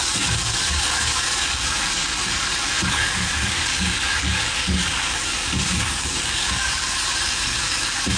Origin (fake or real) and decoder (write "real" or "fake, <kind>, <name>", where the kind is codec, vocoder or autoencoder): fake, codec, DAC